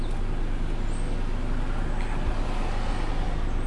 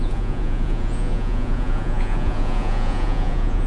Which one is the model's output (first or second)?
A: second